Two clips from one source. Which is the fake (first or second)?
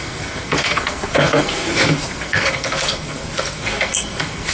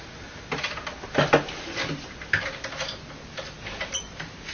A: first